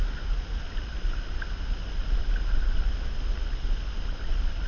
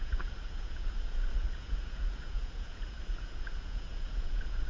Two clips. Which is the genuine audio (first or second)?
first